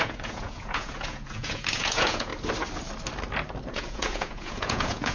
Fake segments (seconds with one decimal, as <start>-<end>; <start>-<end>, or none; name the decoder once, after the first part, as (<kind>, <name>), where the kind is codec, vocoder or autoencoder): 0.0-2.3 (vocoder, Vocos); 3.7-5.1